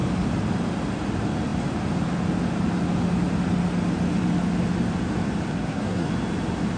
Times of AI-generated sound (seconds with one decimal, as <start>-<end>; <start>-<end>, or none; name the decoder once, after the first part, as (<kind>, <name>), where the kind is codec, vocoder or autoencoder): 5.5-6.1 (codec, SNAC)